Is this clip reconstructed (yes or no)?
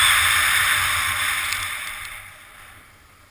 no